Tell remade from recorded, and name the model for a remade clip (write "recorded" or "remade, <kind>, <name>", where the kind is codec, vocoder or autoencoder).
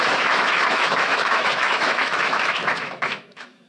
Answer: remade, autoencoder, DAC-VAE